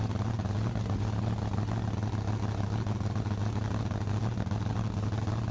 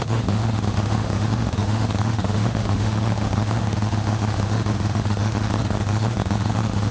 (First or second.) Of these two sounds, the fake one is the second